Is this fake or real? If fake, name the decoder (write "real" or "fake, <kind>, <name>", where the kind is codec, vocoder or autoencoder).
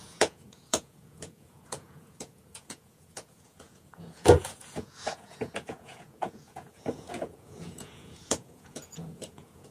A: fake, vocoder, Vocos